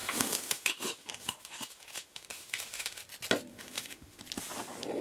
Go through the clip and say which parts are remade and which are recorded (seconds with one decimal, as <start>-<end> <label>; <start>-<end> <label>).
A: 0.0-3.0 remade; 3.0-3.5 recorded; 3.5-4.2 remade; 4.2-5.0 recorded